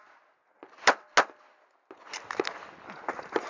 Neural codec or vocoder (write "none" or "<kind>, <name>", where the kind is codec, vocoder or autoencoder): none